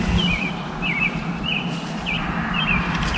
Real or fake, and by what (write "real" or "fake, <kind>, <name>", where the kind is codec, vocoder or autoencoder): real